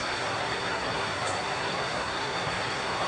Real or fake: fake